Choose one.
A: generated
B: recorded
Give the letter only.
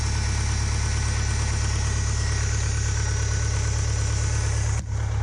B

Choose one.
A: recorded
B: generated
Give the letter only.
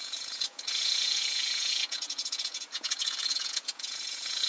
B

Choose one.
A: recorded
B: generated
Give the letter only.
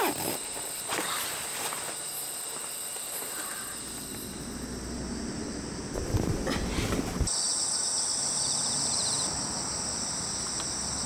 A